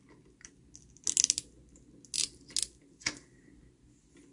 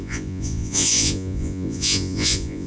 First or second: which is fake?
second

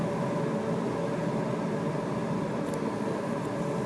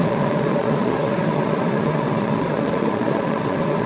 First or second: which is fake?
second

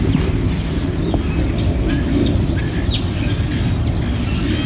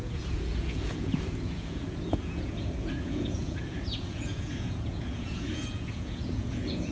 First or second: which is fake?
second